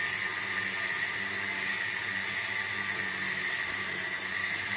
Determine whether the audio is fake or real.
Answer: real